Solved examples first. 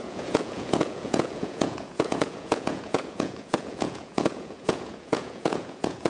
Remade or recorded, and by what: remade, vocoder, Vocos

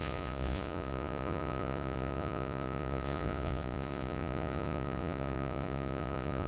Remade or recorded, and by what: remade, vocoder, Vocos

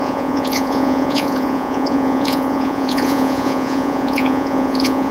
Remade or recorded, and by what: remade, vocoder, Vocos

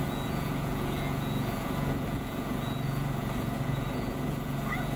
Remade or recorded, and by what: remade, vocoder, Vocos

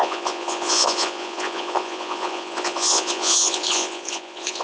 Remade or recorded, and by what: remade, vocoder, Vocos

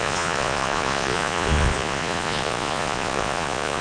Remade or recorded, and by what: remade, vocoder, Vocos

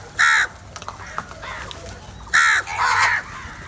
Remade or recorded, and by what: recorded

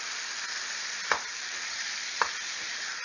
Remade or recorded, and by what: recorded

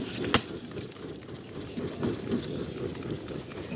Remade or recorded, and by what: recorded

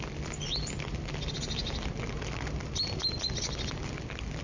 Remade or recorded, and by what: recorded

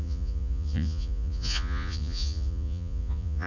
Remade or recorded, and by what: remade, vocoder, Vocos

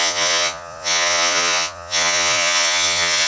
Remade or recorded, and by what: remade, vocoder, Vocos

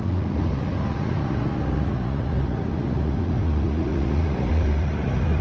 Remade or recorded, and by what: remade, vocoder, Vocos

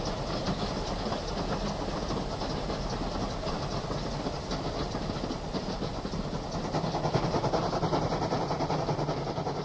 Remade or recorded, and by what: recorded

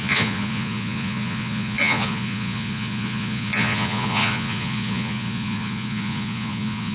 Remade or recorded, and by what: remade, vocoder, Vocos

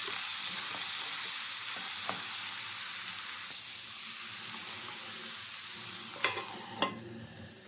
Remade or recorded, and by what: recorded